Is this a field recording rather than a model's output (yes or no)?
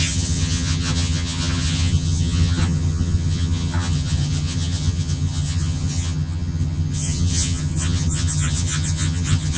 no